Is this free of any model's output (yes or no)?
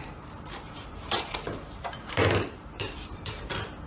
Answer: no